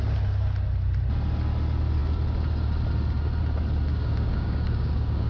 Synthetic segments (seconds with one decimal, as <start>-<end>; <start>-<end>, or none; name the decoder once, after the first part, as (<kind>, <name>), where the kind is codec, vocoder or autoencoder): 3.9-5.3 (codec, DAC)